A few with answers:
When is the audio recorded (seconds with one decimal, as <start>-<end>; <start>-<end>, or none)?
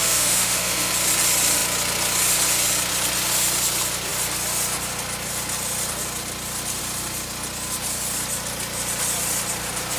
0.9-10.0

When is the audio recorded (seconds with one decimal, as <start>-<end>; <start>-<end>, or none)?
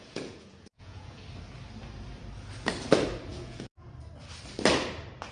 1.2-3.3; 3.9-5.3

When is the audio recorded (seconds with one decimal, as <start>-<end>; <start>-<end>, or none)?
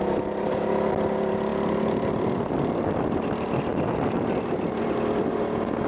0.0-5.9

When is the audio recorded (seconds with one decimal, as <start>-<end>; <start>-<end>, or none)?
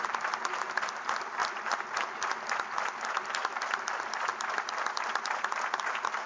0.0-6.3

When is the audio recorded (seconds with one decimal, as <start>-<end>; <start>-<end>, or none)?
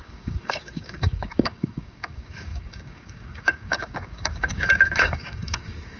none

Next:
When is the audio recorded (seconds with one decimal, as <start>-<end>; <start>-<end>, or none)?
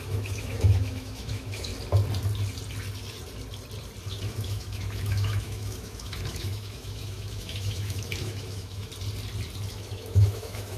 1.7-4.1; 8.9-9.7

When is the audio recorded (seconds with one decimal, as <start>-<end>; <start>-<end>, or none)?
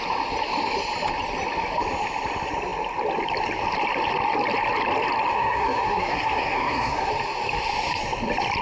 0.0-5.3; 7.1-8.6